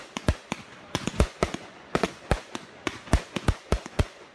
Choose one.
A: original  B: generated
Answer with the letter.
B